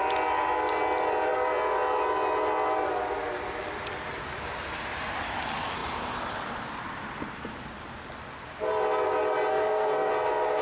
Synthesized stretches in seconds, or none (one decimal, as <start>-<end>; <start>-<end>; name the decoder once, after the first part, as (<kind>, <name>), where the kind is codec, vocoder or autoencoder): 9.5-10.1 (codec, SNAC)